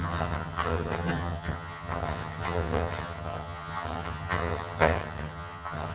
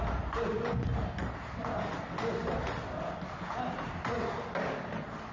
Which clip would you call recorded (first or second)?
second